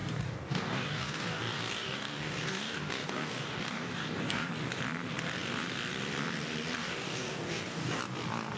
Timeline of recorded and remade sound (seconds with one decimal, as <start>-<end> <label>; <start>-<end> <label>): 0.0-4.5 remade; 4.5-6.8 recorded; 6.8-8.0 remade; 8.0-8.6 recorded